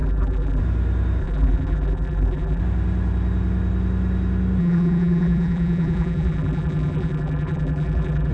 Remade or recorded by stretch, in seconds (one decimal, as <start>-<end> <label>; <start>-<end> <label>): 0.0-0.6 remade; 0.6-1.2 recorded; 1.2-2.6 remade; 2.6-4.6 recorded; 4.6-8.3 remade